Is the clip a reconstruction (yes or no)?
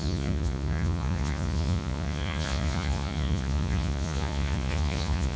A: yes